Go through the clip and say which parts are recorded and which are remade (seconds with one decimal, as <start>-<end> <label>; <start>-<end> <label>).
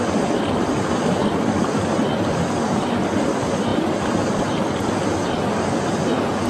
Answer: 0.0-6.5 recorded